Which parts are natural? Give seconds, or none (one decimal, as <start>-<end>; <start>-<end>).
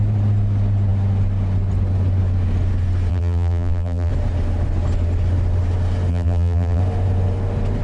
0.0-3.1; 4.1-6.1; 6.8-7.8